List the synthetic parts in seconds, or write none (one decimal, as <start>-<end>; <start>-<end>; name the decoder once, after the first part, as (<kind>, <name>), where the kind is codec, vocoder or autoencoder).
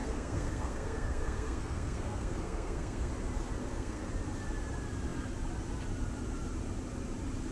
0.0-3.1 (codec, SNAC); 3.6-4.1